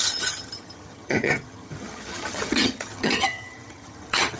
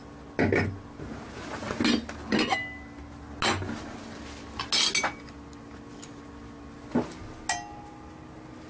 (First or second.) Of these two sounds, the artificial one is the first